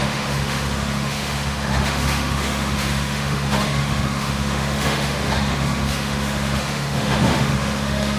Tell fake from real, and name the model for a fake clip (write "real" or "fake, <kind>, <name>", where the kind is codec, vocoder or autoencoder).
fake, autoencoder, DAC-VAE